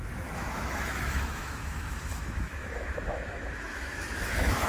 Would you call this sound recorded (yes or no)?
no